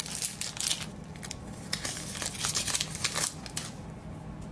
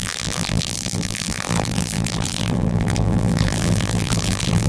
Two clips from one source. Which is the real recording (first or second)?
first